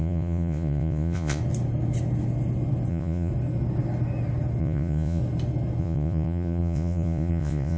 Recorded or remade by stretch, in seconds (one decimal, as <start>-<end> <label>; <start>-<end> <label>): 0.0-1.4 remade; 1.4-2.9 recorded; 2.9-3.3 remade; 3.3-4.6 recorded; 4.6-5.2 remade; 5.2-5.8 recorded; 5.8-7.8 remade